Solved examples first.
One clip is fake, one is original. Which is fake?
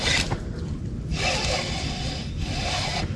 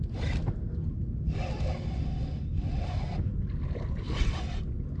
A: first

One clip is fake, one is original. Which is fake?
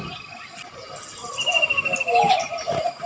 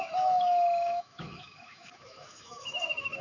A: second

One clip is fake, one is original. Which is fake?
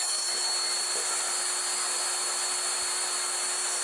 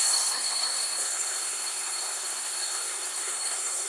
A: second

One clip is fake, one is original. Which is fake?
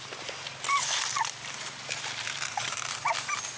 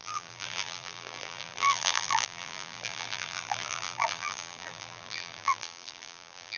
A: second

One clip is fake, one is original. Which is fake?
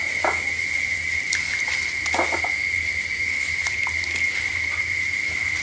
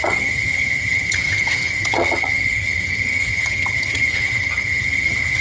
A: second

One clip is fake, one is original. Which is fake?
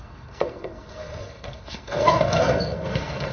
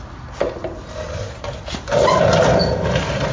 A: first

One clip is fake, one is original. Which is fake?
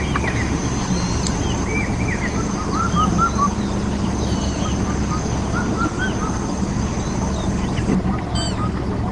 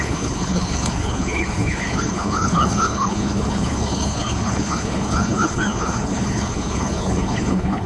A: second